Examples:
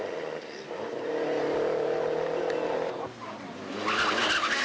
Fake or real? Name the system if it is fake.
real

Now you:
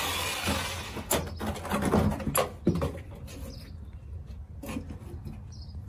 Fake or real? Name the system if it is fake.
real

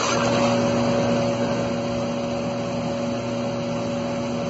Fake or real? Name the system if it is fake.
real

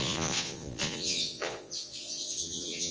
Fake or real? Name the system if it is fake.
fake, vocoder, Vocos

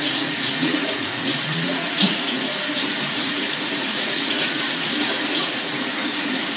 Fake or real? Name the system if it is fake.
fake, vocoder, Vocos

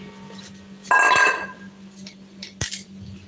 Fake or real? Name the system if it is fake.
real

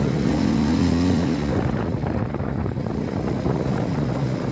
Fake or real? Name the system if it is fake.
fake, vocoder, Vocos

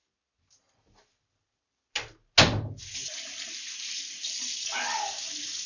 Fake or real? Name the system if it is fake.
real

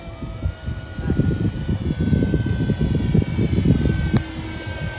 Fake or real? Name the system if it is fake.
real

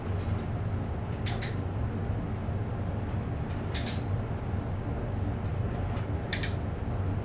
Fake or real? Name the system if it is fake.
real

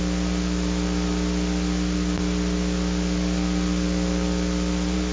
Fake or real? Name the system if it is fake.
real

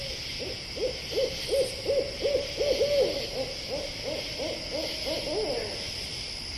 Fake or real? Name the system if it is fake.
real